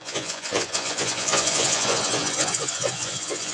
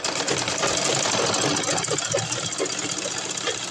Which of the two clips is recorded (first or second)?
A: second